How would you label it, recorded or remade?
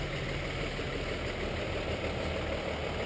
recorded